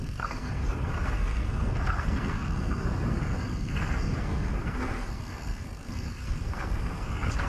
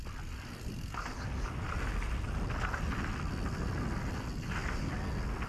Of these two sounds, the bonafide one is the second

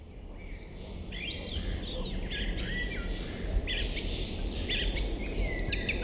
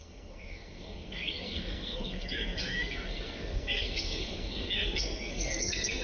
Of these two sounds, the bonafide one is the first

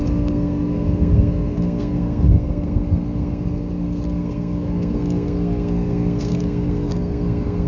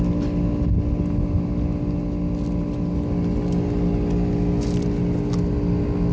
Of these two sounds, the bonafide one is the second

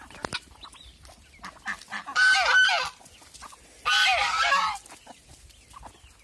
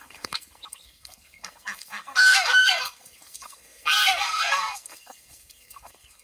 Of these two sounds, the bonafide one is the first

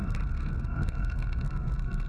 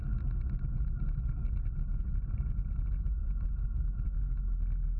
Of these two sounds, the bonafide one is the second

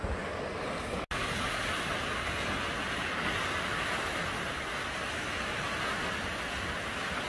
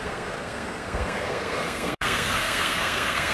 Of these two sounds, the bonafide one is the first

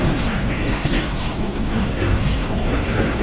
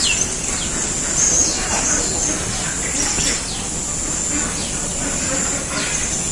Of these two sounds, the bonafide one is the second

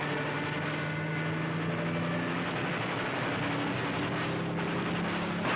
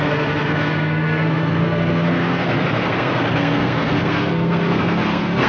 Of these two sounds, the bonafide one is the first